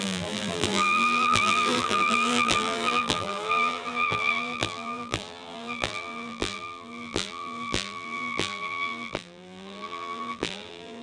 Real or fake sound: fake